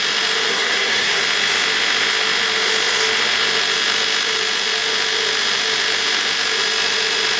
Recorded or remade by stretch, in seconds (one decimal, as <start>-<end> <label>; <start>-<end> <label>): 0.0-0.5 recorded; 0.5-1.2 remade; 1.2-7.4 recorded